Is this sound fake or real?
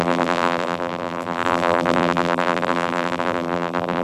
fake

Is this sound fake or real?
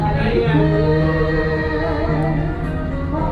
real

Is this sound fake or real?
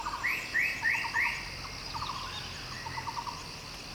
real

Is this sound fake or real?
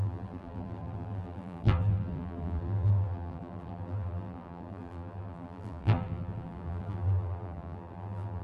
fake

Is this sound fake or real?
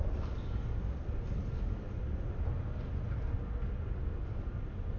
real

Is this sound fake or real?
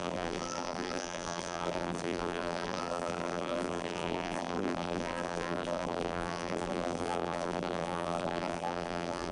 fake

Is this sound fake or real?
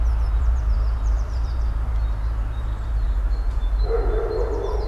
fake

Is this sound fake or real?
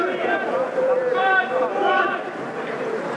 fake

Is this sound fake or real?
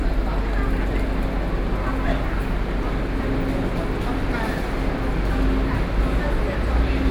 real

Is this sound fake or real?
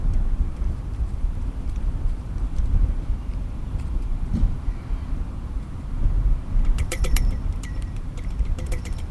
fake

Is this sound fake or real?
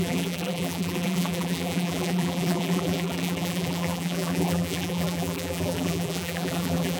fake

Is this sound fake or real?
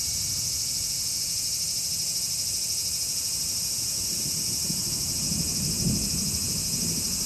real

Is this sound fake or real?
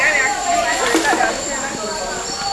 real